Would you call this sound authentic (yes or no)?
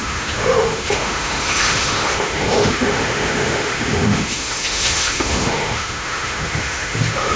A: no